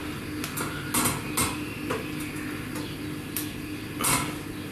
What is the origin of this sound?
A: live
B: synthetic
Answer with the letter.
A